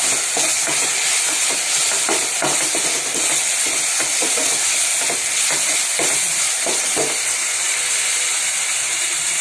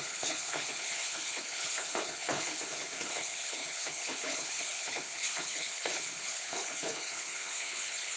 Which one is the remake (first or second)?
second